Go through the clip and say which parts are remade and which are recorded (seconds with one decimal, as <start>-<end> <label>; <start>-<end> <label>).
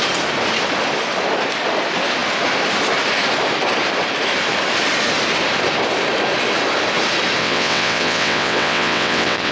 0.0-7.4 recorded; 7.4-9.5 remade